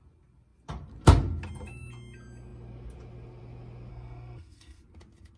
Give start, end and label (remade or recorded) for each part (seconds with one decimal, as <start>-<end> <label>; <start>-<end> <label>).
0.0-3.9 recorded; 3.9-4.8 remade; 4.8-5.4 recorded